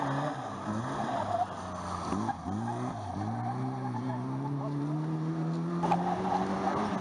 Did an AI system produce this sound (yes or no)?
no